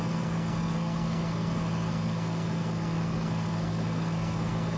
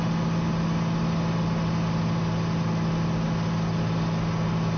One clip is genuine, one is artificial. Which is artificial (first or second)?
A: first